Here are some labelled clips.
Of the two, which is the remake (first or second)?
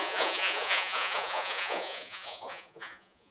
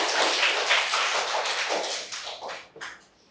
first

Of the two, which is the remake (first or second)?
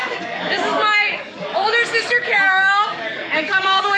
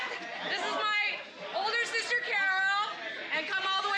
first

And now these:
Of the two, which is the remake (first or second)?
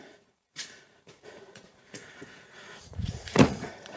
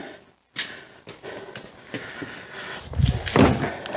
first